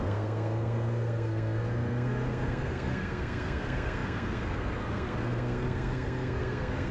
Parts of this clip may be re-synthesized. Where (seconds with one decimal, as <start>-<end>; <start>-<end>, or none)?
0.0-6.9